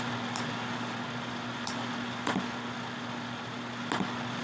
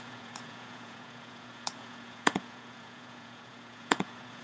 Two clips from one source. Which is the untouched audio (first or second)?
first